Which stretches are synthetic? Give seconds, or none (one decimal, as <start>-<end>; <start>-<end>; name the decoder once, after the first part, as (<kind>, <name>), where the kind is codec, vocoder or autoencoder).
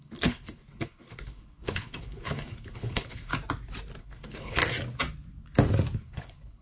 0.0-3.3 (codec, HILCodec); 4.0-4.6; 6.0-6.6